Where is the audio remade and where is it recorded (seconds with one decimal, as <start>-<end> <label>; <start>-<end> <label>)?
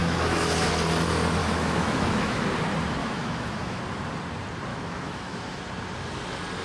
0.0-0.7 remade; 0.7-1.4 recorded; 1.4-2.4 remade; 2.4-3.0 recorded; 3.0-3.8 remade; 3.8-4.7 recorded; 4.7-5.6 remade; 5.6-6.6 recorded